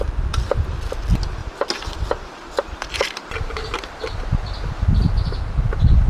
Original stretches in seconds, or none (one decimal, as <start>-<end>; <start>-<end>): 0.0-1.4; 4.0-6.1